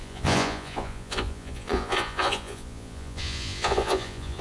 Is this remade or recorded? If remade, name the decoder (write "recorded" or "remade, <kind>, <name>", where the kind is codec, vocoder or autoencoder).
remade, vocoder, Vocos